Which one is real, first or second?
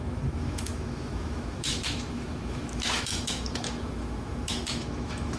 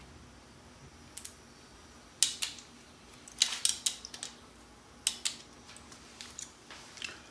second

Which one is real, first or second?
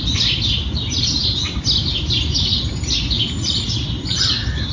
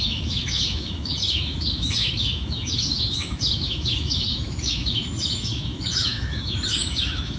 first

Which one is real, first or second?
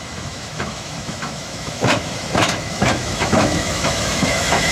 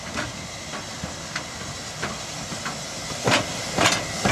second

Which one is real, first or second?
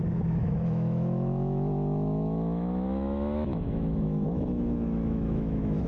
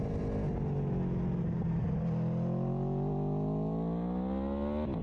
second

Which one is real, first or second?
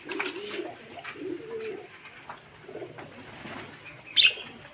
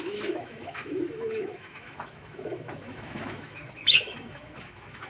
first